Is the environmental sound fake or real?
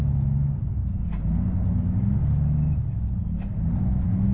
real